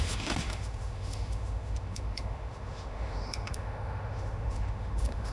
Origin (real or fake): fake